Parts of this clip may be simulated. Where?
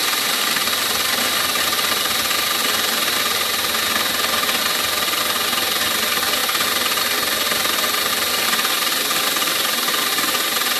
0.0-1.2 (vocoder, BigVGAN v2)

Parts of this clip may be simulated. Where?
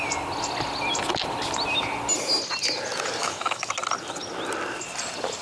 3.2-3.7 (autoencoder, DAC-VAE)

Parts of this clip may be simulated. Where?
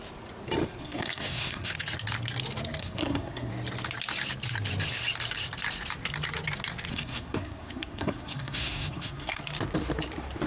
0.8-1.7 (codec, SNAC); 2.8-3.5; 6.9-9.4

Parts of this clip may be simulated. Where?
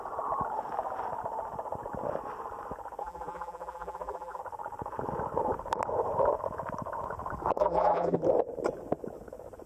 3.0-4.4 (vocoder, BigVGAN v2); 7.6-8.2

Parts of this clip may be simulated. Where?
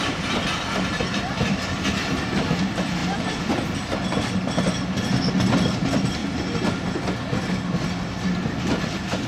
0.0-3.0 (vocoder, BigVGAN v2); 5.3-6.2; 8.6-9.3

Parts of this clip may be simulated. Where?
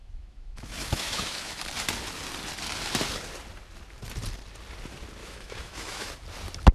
0.0-1.6 (autoencoder, DAC-VAE); 5.2-6.1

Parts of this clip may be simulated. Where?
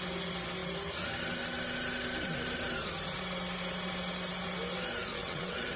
5.1-5.8 (vocoder, WaveNeXt)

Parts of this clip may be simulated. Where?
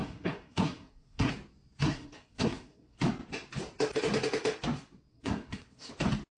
0.0-1.3 (codec, SNAC); 1.8-3.0; 5.1-5.9